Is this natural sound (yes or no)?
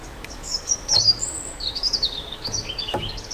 no